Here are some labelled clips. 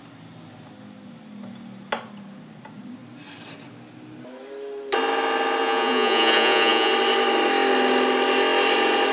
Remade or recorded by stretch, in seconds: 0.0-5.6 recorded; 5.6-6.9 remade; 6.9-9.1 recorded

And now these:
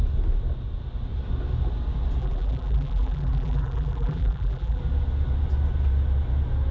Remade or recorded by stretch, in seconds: 0.0-2.2 recorded; 2.2-4.8 remade; 4.8-6.7 recorded

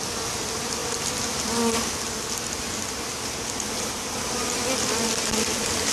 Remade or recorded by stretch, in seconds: 0.0-5.9 recorded

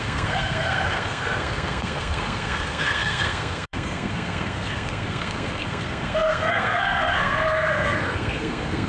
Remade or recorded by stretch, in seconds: 0.0-8.9 remade

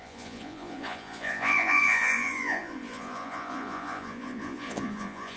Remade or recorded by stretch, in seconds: 0.0-5.4 remade

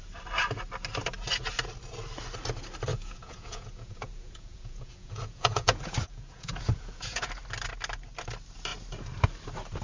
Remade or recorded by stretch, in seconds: 0.0-2.9 recorded; 2.9-7.3 remade; 7.3-9.8 recorded